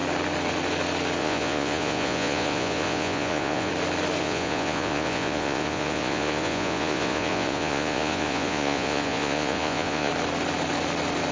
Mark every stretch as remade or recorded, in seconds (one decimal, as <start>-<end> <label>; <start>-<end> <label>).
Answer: 0.0-1.2 recorded; 1.2-3.7 remade; 3.7-4.2 recorded; 4.2-10.1 remade; 10.1-11.3 recorded